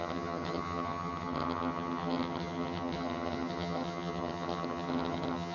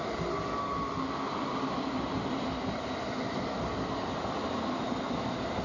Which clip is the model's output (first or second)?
first